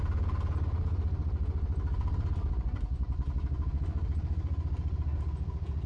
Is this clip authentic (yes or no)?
yes